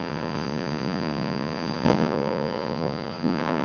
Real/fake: fake